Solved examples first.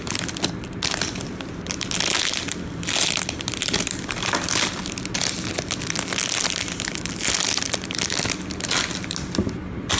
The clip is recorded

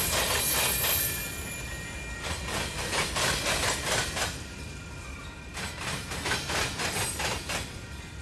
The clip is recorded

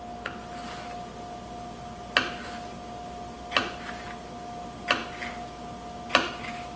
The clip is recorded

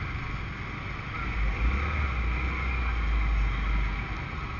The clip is recorded